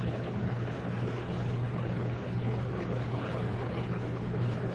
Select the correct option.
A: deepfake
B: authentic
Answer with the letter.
A